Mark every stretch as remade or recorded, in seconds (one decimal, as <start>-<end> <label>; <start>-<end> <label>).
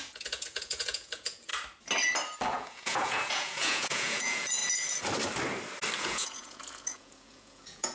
0.0-1.5 remade; 1.5-2.5 recorded; 2.5-4.6 remade; 4.6-6.0 recorded; 6.0-7.9 remade